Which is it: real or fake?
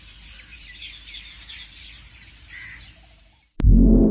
fake